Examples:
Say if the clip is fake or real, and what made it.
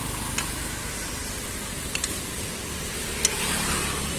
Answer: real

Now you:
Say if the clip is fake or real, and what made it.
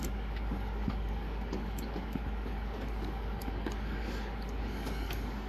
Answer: fake, codec, DAC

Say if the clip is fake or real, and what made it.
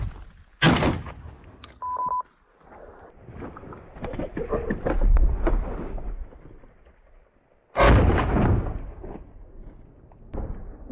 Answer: real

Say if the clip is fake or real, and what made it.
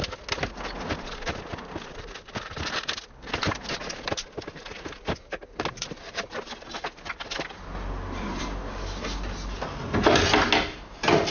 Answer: real